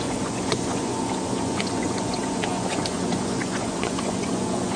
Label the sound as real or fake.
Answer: fake